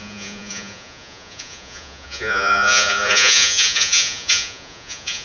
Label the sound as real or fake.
fake